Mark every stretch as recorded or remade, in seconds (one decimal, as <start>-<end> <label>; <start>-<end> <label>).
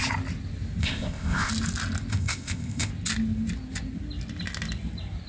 0.0-0.8 recorded; 0.8-1.5 remade; 1.5-2.1 recorded; 2.1-2.9 remade; 2.9-5.3 recorded